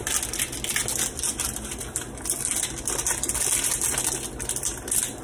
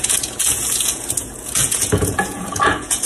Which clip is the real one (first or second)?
first